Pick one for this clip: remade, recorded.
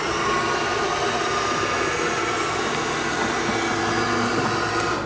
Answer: recorded